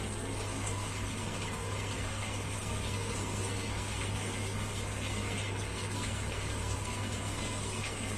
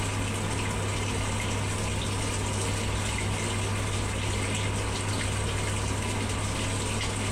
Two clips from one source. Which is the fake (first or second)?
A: first